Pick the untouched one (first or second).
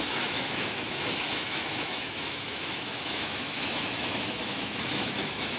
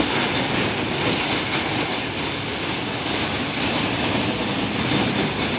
second